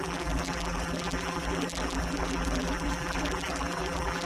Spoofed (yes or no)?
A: yes